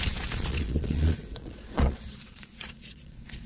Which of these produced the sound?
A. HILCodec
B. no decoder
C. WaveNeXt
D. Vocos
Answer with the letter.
D